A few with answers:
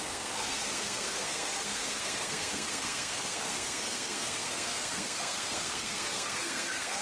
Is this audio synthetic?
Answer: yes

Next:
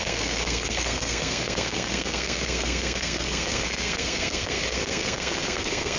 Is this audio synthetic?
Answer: yes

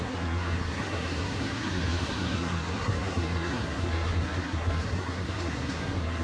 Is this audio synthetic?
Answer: yes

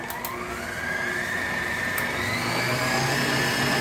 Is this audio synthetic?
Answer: no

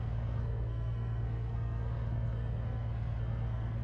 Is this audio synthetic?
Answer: yes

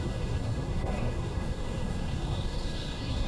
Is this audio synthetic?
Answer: yes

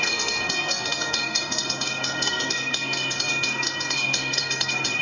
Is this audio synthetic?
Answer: yes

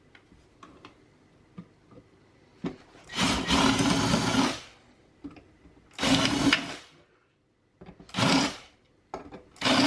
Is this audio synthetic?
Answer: no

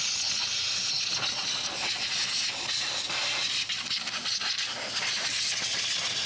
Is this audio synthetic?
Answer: no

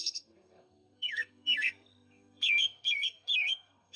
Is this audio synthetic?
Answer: yes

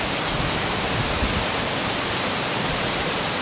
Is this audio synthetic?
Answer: no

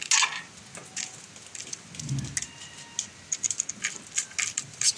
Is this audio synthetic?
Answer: no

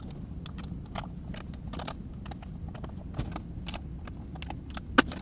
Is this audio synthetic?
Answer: no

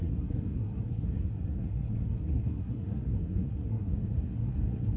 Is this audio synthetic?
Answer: yes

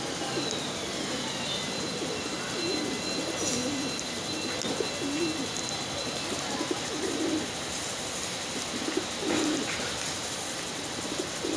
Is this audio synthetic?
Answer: no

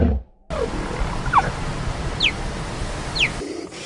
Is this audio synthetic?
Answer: no